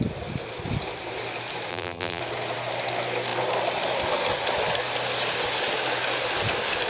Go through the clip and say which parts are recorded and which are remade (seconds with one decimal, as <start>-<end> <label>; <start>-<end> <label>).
0.0-1.7 recorded; 1.7-2.2 remade; 2.2-6.9 recorded